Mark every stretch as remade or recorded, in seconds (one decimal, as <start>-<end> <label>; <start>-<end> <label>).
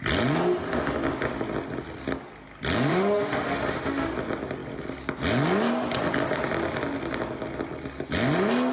0.0-2.9 recorded; 2.9-4.1 remade; 4.1-8.7 recorded